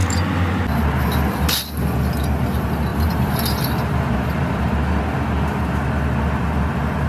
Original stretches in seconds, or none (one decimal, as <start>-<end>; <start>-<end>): 0.6-2.9; 4.7-7.1